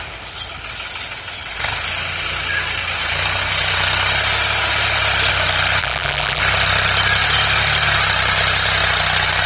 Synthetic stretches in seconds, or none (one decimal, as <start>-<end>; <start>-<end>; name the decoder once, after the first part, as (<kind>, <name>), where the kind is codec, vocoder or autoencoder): 5.8-6.4 (vocoder, BigVGAN v2)